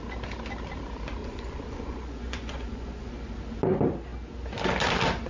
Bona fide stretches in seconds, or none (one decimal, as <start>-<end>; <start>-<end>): 0.0-1.2; 3.1-5.3

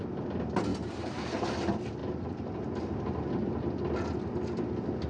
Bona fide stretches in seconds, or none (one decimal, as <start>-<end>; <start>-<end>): 0.0-0.7; 1.5-2.0; 3.3-5.1

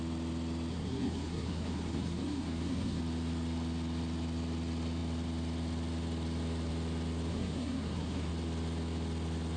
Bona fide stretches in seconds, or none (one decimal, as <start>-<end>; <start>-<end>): 0.0-0.7; 3.0-7.3; 8.3-9.6

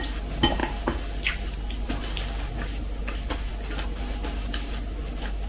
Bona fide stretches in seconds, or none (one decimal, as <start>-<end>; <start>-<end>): 0.0-5.5

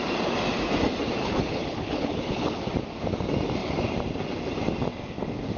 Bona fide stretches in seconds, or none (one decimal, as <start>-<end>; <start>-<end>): 0.0-1.2; 2.7-5.6

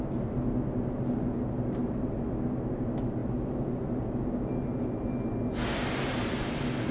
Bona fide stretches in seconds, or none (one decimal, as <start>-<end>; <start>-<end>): 0.0-6.9

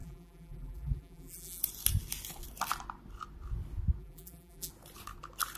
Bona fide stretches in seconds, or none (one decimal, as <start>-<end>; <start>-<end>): 1.6-4.0; 4.7-5.6